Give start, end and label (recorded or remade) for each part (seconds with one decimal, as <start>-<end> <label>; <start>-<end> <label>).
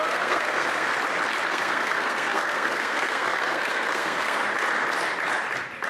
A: 0.0-0.9 remade; 0.9-1.5 recorded; 1.5-4.4 remade; 4.4-5.9 recorded